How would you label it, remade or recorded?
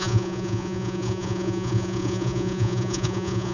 remade